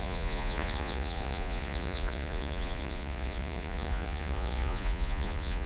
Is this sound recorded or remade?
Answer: remade